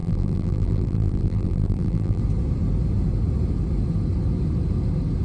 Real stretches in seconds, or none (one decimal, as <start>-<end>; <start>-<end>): 2.2-5.2